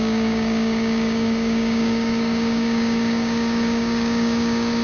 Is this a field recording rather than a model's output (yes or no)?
no